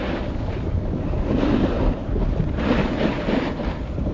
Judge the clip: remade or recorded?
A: recorded